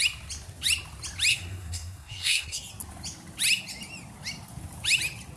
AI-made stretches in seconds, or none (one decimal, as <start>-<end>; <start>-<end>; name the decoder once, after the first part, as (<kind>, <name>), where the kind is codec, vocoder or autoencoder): 1.3-2.7 (codec, SNAC)